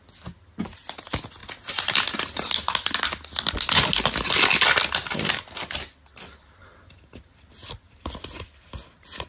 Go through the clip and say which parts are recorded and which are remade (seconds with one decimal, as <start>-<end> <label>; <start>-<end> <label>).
0.0-9.3 recorded